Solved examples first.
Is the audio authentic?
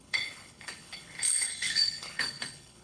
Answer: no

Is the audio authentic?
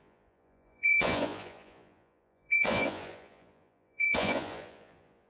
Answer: no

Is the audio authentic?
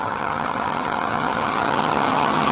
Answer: no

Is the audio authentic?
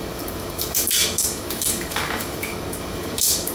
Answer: no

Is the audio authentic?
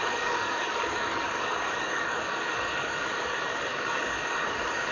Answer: no